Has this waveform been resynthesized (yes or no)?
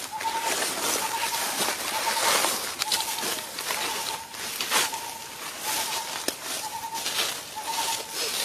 no